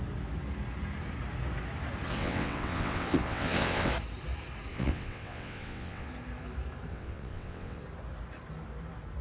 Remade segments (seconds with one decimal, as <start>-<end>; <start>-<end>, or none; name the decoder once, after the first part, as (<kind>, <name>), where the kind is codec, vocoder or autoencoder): 2.2-3.9 (vocoder, WaveNeXt); 4.7-6.1; 6.9-7.8